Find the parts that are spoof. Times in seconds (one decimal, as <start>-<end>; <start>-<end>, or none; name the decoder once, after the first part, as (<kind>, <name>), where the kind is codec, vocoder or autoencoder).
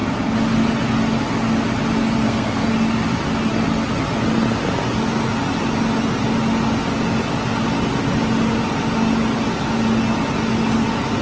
2.2-2.7 (codec, SNAC)